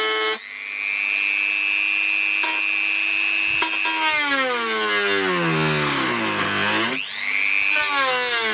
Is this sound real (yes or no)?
yes